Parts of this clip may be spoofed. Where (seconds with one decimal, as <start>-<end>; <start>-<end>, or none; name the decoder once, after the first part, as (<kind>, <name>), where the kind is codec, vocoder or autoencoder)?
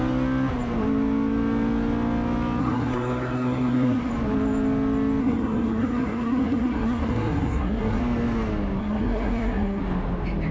2.6-4.1 (codec, SNAC); 5.2-8.0; 8.8-9.8